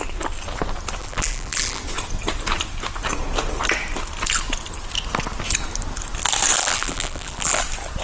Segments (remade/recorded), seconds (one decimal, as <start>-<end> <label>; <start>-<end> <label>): 0.0-1.0 recorded; 1.0-1.8 remade; 1.8-6.6 recorded; 6.6-7.6 remade; 7.6-8.0 recorded